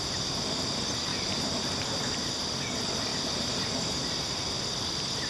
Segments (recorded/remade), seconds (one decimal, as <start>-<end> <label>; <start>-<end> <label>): 0.0-1.1 recorded; 1.1-2.1 remade; 2.1-3.1 recorded; 3.1-4.1 remade; 4.1-5.3 recorded